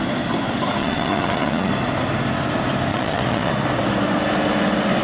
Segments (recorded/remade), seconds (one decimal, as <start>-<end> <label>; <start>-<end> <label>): 0.0-0.8 recorded; 0.8-1.7 remade; 1.7-2.9 recorded; 2.9-3.5 remade; 3.5-5.0 recorded